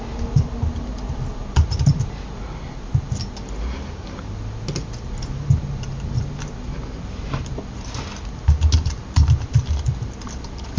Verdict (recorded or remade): recorded